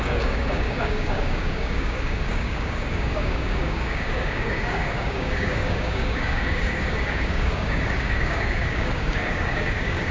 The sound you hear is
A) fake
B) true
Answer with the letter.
A